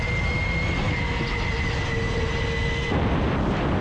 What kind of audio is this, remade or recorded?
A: recorded